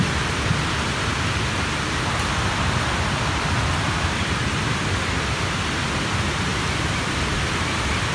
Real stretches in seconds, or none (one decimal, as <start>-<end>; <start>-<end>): 0.0-8.1